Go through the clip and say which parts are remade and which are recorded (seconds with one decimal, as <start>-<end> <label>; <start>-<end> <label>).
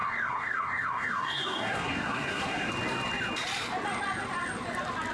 0.0-2.7 remade; 2.7-5.1 recorded